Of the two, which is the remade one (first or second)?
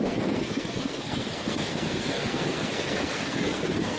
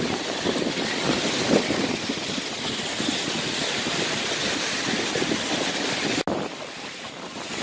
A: first